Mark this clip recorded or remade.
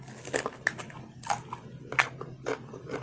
recorded